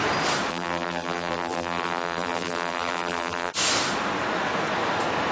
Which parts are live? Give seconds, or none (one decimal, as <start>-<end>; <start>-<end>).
0.0-0.5; 3.5-5.3